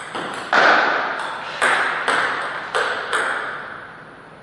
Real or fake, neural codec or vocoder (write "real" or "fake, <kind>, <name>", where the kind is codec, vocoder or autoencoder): real